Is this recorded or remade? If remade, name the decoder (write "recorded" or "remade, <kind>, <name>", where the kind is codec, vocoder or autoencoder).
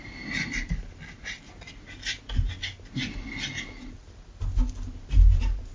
recorded